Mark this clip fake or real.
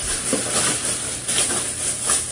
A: real